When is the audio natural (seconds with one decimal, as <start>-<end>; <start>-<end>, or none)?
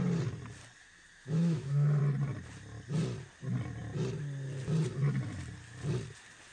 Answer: 0.0-0.8; 2.0-6.5